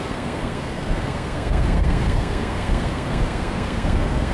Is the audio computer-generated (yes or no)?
yes